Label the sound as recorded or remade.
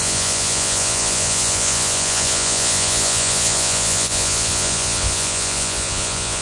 remade